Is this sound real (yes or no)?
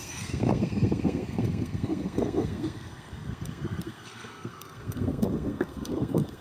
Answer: no